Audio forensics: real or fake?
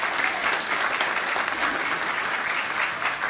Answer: real